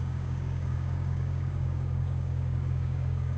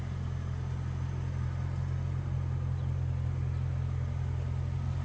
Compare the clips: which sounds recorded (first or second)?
second